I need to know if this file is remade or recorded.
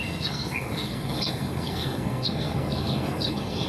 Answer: remade